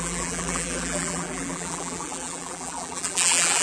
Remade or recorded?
remade